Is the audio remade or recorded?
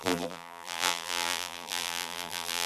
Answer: remade